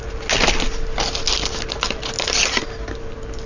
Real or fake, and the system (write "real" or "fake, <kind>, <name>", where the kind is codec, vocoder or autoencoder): real